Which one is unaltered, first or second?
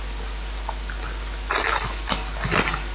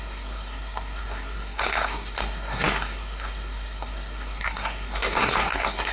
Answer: first